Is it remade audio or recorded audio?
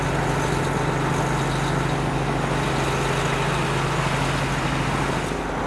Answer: recorded